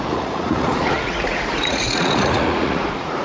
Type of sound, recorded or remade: remade